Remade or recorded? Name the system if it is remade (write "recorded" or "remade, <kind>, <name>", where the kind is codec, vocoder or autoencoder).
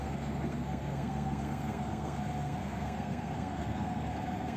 remade, codec, SNAC